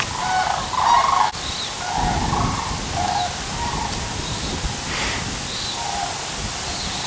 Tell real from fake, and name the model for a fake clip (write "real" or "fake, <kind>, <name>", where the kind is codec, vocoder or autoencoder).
real